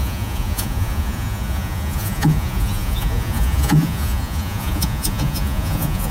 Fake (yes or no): yes